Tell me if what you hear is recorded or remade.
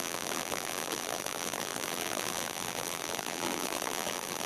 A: remade